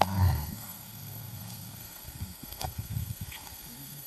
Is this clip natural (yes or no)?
no